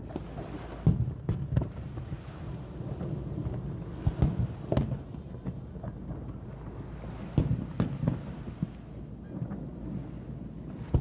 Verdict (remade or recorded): recorded